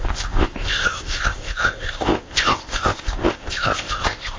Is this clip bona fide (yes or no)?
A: no